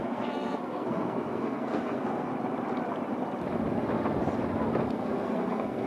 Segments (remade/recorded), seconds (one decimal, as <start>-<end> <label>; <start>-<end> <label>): 0.0-2.3 remade; 2.3-4.9 recorded; 4.9-5.9 remade